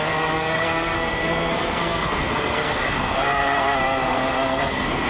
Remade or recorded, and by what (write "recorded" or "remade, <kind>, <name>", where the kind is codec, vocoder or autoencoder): remade, codec, SNAC